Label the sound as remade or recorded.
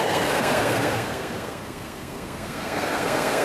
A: remade